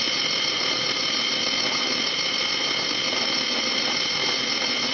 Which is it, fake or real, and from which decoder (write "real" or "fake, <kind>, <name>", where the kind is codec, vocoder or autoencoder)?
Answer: real